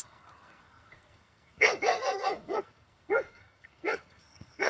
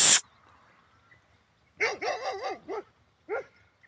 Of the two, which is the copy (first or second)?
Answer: first